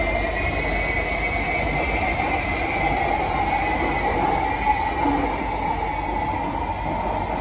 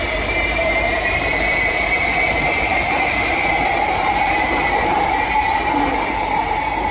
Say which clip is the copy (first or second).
second